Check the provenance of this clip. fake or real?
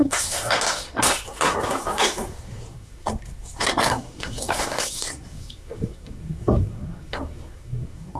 fake